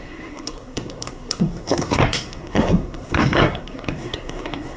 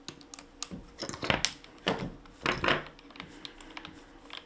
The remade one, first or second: first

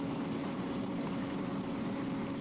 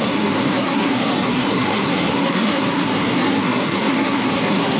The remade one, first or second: second